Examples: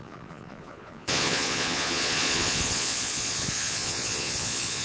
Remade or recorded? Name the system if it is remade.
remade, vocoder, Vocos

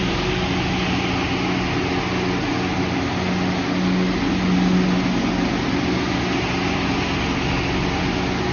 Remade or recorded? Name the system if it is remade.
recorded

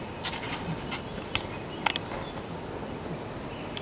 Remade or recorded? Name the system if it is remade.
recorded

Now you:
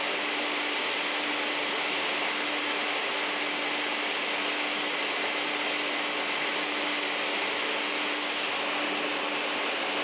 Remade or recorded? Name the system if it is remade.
recorded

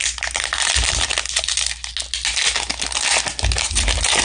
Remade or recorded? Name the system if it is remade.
recorded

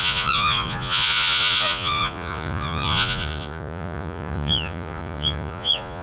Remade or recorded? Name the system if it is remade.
remade, vocoder, Vocos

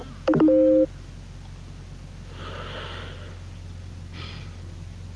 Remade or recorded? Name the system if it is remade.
recorded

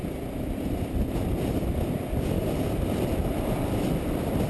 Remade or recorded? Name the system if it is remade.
recorded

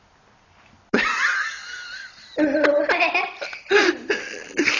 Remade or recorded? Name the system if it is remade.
recorded